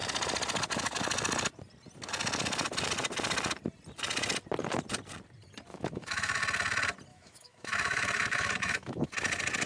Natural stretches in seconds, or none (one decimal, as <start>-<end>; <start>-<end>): 0.0-5.7; 6.4-7.1; 9.1-9.7